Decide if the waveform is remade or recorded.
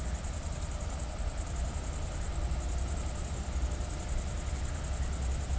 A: recorded